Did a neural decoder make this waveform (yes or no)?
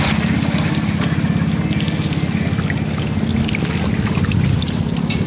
no